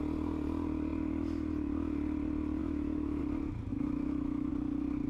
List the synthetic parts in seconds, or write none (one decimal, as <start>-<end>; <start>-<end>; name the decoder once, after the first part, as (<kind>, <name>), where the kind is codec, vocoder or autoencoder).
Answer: 2.6-3.2 (autoencoder, DAC-VAE); 3.7-4.5

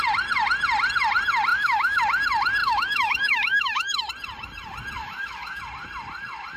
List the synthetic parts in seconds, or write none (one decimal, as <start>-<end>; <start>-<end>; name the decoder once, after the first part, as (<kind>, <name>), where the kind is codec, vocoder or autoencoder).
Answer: 1.5-2.0 (autoencoder, DAC-VAE); 2.6-4.1; 5.0-5.6